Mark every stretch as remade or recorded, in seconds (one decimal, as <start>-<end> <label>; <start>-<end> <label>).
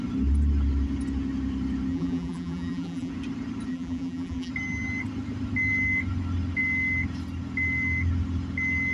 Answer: 0.0-1.9 recorded; 1.9-3.1 remade; 3.1-3.7 recorded; 3.7-4.5 remade; 4.5-8.9 recorded